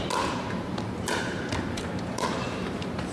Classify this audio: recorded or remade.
remade